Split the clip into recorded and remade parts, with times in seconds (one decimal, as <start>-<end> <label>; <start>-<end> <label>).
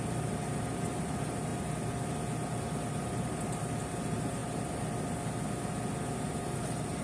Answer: 0.0-1.5 remade; 1.5-2.9 recorded; 2.9-4.4 remade; 4.4-6.4 recorded; 6.4-7.0 remade